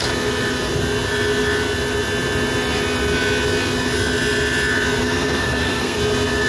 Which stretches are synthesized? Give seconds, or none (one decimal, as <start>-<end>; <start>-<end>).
5.0-6.0